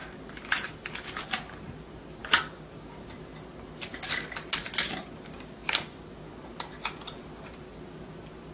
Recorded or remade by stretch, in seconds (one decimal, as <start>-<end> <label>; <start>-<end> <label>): 0.0-8.5 recorded